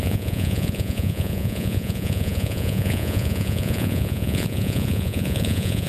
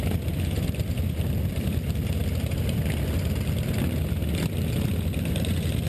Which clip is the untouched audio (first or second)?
second